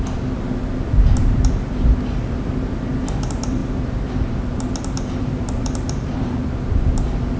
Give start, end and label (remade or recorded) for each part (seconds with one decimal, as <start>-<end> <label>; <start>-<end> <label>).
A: 0.0-7.4 recorded